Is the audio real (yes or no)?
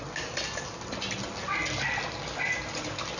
yes